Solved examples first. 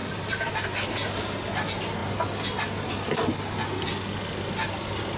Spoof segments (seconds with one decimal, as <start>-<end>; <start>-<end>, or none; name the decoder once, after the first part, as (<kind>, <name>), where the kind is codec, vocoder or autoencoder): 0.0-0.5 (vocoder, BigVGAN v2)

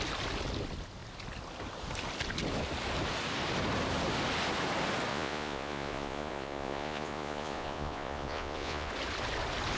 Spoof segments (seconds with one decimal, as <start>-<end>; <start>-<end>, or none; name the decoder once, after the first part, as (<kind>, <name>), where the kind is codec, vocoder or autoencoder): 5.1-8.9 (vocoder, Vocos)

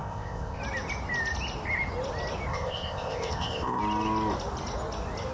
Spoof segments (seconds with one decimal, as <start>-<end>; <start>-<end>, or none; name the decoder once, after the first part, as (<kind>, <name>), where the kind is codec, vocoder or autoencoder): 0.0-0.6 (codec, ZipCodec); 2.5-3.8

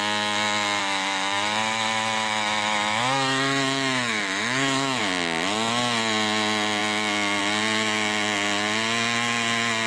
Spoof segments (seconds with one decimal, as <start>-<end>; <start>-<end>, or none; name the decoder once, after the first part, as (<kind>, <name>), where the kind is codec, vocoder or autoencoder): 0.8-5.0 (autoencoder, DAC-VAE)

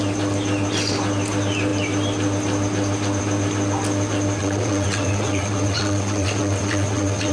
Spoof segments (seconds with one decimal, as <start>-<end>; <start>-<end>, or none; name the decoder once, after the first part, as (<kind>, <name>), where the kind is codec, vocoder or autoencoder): 4.4-7.3 (vocoder, WaveNeXt)